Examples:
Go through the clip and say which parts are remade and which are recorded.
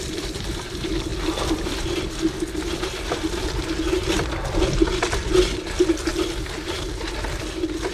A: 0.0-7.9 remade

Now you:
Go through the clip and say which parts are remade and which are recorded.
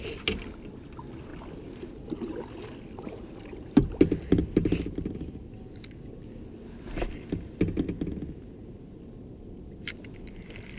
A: 0.0-10.8 recorded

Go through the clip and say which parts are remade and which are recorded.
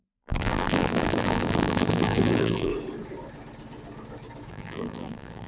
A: 0.0-2.7 remade; 2.7-4.5 recorded; 4.5-5.5 remade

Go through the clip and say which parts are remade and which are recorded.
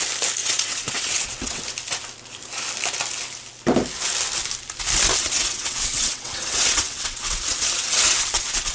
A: 0.0-0.4 recorded; 0.4-1.6 remade; 1.6-5.2 recorded; 5.2-8.7 remade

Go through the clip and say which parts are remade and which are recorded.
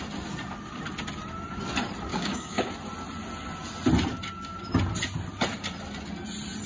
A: 0.0-2.1 recorded; 2.1-2.7 remade; 2.7-6.7 recorded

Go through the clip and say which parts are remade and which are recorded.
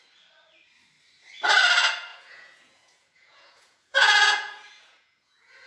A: 0.0-2.1 recorded; 2.1-5.7 remade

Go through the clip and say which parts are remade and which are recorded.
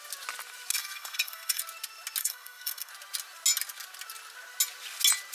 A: 0.0-0.7 recorded; 0.7-1.6 remade; 1.6-2.2 recorded; 2.2-2.9 remade; 2.9-5.3 recorded